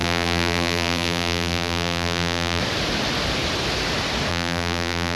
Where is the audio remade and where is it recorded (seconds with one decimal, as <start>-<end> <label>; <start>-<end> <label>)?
0.0-2.6 remade; 2.6-4.3 recorded; 4.3-5.2 remade